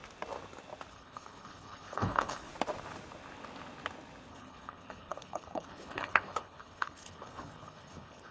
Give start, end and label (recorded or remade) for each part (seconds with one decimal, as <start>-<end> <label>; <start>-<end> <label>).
0.0-0.9 recorded; 0.9-2.5 remade; 2.5-4.3 recorded; 4.3-8.3 remade